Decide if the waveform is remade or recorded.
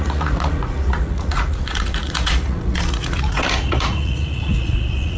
remade